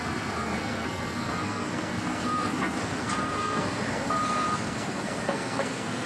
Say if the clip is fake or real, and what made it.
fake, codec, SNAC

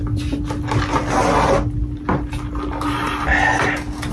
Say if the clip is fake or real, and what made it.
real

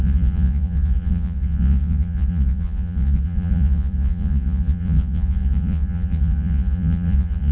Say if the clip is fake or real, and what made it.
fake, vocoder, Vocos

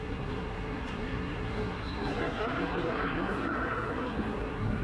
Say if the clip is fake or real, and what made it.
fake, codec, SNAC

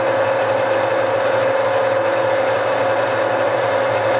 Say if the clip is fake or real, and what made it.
real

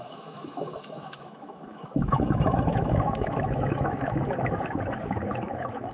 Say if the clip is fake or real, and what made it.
fake, autoencoder, DAC-VAE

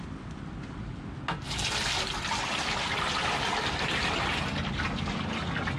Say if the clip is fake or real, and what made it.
real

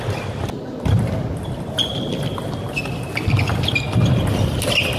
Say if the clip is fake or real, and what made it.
real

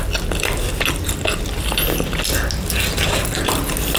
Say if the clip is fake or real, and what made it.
real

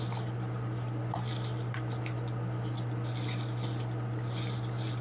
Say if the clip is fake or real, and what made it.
real